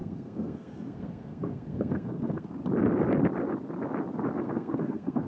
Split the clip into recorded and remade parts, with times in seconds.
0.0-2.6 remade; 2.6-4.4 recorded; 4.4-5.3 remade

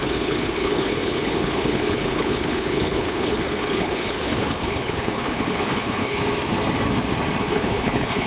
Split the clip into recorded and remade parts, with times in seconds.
0.0-6.2 remade; 6.2-7.4 recorded; 7.4-8.3 remade

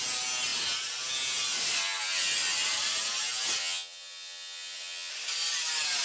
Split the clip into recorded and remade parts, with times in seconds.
0.0-3.6 recorded; 3.6-5.1 remade; 5.1-6.0 recorded

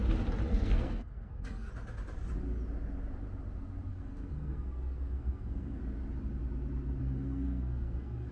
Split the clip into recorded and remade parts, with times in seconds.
0.0-0.5 recorded; 0.5-1.7 remade; 1.7-3.9 recorded; 3.9-5.8 remade; 5.8-7.0 recorded; 7.0-8.3 remade

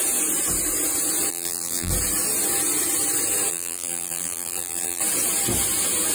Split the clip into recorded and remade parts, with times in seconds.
0.0-1.3 recorded; 1.3-1.9 remade; 1.9-3.5 recorded; 3.5-5.0 remade; 5.0-6.1 recorded